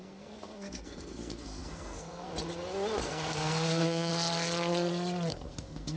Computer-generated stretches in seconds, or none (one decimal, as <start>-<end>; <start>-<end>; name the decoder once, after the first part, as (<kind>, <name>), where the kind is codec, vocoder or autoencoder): 0.0-2.3 (codec, SNAC); 3.0-4.1; 5.3-6.0